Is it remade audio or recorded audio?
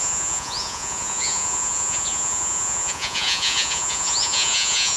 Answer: remade